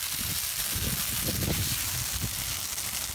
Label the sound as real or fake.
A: real